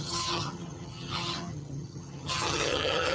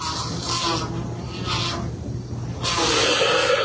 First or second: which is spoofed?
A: first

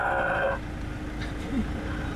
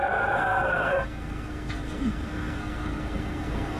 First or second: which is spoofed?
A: second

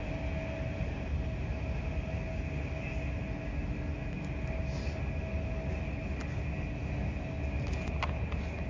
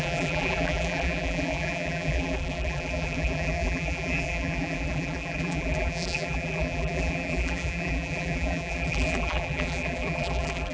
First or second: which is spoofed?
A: second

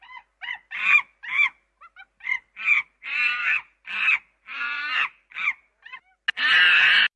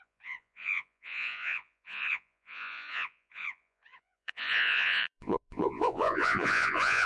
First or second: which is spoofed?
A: second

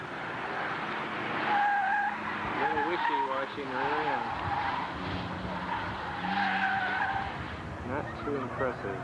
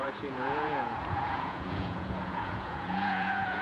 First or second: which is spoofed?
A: second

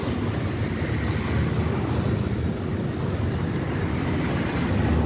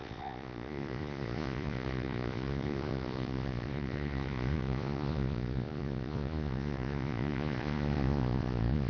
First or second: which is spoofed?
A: second